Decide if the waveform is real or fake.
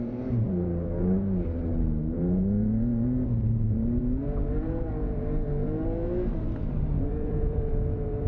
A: fake